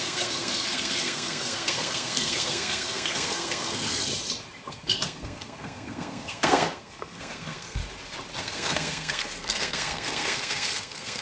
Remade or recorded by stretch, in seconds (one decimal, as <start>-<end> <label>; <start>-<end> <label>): 0.0-4.1 remade; 4.1-4.7 recorded; 4.7-7.8 remade; 7.8-8.4 recorded; 8.4-11.2 remade